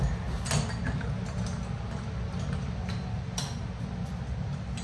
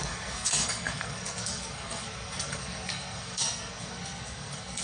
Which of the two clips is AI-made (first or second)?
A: second